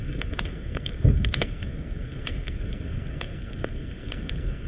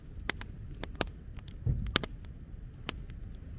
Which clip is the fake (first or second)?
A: first